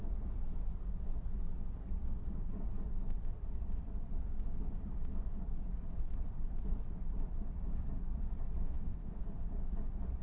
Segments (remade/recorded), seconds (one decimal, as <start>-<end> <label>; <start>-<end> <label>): 0.0-8.6 recorded; 8.6-9.2 remade; 9.2-10.2 recorded